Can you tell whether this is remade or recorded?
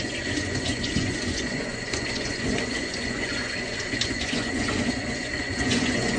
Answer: remade